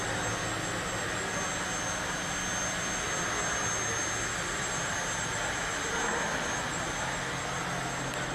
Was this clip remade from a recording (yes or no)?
no